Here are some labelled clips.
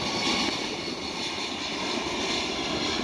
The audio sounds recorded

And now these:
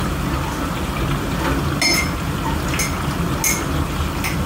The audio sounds recorded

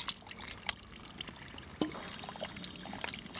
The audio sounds recorded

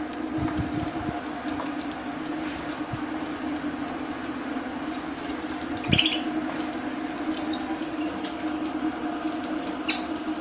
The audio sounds recorded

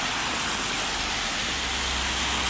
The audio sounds recorded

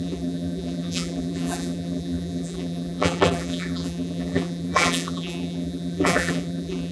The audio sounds remade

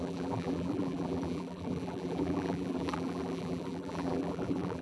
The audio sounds remade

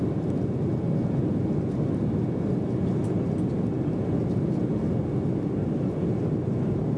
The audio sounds recorded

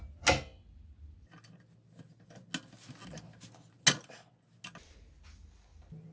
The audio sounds recorded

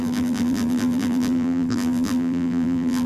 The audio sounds remade